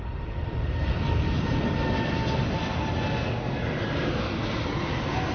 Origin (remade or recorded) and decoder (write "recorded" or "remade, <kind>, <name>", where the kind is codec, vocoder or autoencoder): recorded